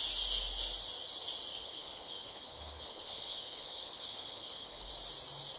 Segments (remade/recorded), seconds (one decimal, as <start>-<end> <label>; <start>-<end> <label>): 0.0-1.5 recorded; 1.5-4.9 remade; 4.9-5.6 recorded